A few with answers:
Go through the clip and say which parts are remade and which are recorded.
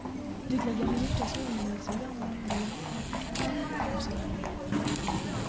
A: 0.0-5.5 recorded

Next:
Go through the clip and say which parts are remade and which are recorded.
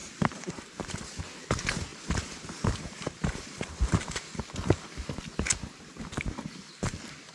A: 0.0-0.6 remade; 0.6-1.9 recorded; 1.9-4.4 remade; 4.4-7.3 recorded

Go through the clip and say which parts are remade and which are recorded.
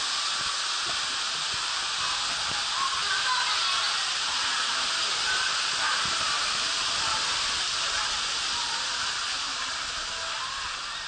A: 0.0-11.1 recorded